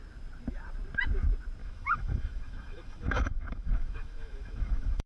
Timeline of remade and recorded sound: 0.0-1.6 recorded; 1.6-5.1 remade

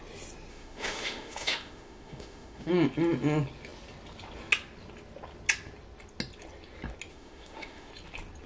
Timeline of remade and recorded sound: 0.0-0.5 recorded; 0.5-2.7 remade; 2.7-7.1 recorded; 7.1-7.9 remade; 7.9-8.5 recorded

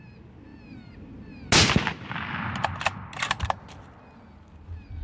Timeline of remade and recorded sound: 0.0-5.0 recorded

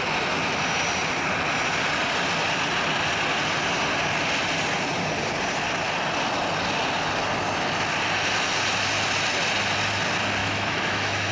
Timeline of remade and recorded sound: 0.0-10.4 recorded; 10.4-11.3 remade

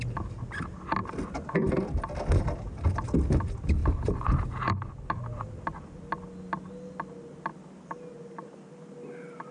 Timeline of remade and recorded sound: 0.0-9.5 recorded

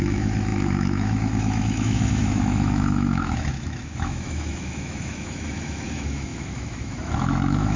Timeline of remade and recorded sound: 0.0-7.8 remade

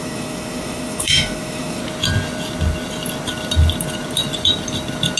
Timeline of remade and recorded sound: 0.0-1.8 remade; 1.8-5.2 recorded